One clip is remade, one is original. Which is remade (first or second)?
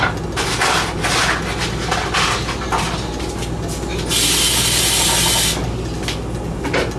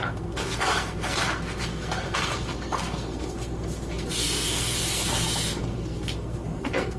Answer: second